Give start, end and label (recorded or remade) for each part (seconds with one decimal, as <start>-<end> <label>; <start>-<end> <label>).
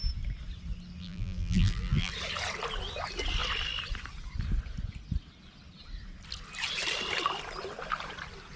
0.0-1.0 recorded; 1.0-2.1 remade; 2.1-8.6 recorded